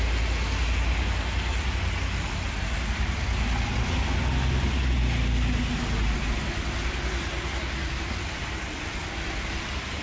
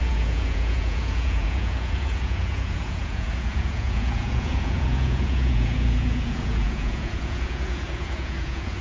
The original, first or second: first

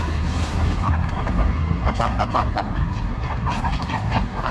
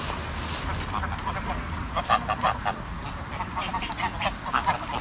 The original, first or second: second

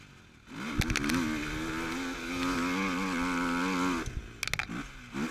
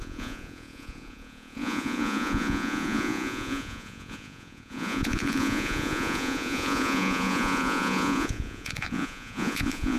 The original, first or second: first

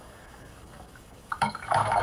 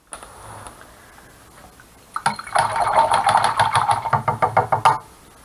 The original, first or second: second